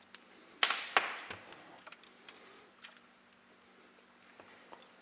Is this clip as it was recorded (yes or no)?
yes